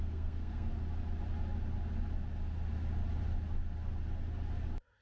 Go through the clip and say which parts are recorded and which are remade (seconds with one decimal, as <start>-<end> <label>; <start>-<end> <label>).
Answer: 0.0-0.7 remade; 0.7-5.0 recorded